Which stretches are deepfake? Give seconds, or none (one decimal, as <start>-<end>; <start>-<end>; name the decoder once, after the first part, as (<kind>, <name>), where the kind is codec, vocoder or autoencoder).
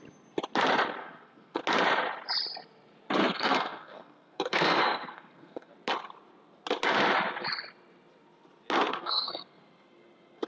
1.0-1.6 (codec, SNAC); 3.2-5.7; 8.9-9.6